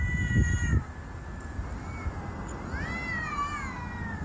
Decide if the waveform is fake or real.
real